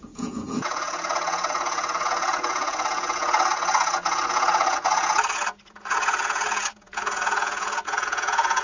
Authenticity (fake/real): fake